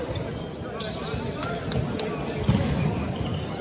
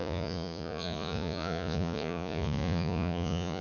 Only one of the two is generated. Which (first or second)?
second